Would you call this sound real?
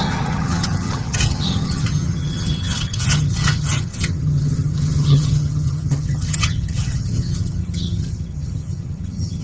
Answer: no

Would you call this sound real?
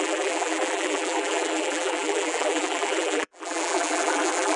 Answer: no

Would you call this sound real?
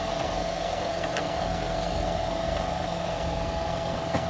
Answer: no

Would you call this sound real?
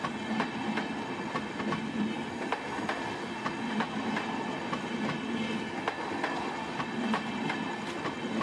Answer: yes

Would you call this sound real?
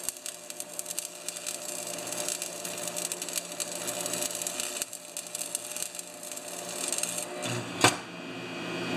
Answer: yes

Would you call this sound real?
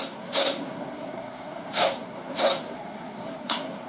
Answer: no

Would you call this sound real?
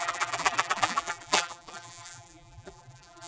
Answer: no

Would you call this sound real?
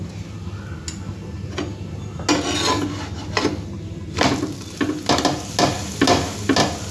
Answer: yes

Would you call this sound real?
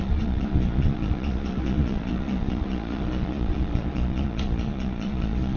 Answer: no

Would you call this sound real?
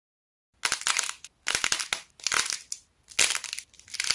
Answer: yes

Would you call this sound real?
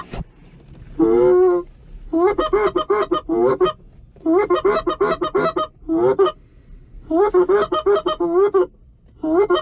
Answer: yes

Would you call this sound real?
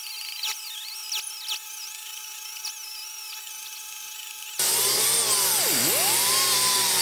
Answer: yes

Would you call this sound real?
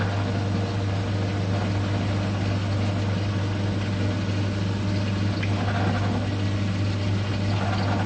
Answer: yes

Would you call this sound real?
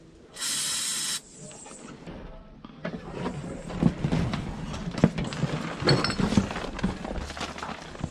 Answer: yes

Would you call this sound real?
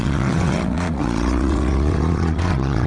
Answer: no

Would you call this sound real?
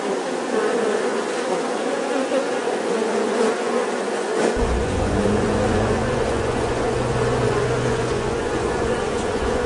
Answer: no